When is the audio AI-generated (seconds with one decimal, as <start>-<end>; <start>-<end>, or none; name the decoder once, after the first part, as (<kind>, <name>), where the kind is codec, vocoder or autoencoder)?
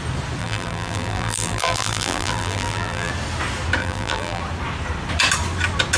0.4-3.1 (vocoder, BigVGAN v2); 3.8-4.4